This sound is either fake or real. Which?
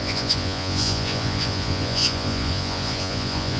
fake